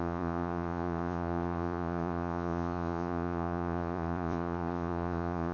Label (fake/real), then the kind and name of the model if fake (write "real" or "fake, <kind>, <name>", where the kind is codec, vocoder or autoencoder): fake, vocoder, Vocos